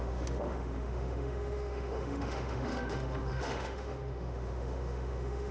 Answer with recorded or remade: remade